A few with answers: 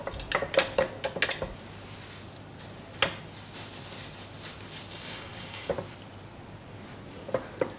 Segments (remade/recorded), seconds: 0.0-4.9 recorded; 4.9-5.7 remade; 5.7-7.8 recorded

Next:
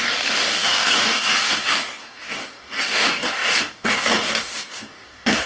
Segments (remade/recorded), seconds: 0.0-5.5 remade

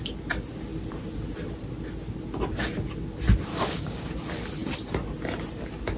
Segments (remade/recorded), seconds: 0.0-3.5 recorded; 3.5-4.1 remade; 4.1-6.0 recorded

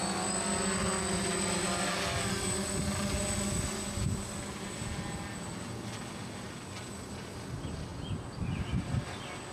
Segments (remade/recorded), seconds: 0.0-9.5 recorded

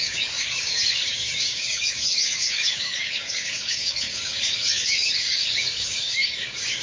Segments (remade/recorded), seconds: 0.0-6.8 remade

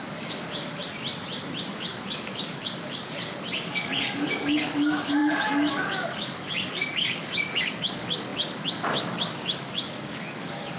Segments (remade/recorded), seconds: 0.0-0.8 remade; 0.8-1.7 recorded; 1.7-10.8 remade

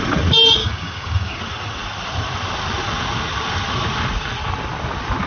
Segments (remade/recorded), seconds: 0.0-0.6 recorded; 0.6-1.4 remade; 1.4-5.3 recorded